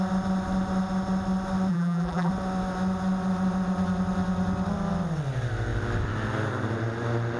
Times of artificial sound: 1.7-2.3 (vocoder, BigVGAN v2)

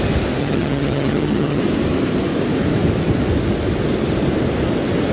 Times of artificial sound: 0.4-1.6 (vocoder, HiFi-GAN)

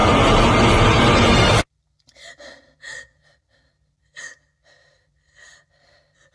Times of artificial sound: none

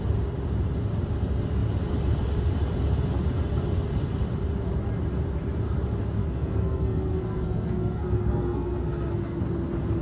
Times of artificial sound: 6.2-9.4 (codec, SNAC)

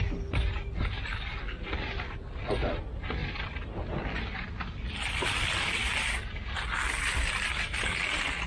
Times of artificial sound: 3.2-3.8 (vocoder, BigVGAN v2)

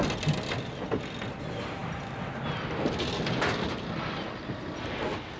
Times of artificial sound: none